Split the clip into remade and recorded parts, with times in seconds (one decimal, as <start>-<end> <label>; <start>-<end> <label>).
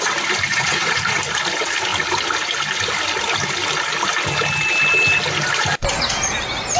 0.0-0.5 recorded; 0.5-1.2 remade; 1.2-6.8 recorded